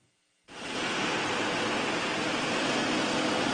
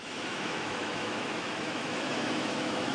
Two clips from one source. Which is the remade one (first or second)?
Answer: second